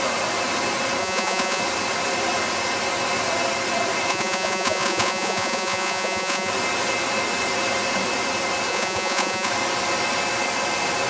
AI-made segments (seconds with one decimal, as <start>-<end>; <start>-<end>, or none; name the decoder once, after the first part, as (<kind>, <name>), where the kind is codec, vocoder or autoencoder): 1.0-1.6 (vocoder, Vocos); 4.1-6.5; 8.7-9.5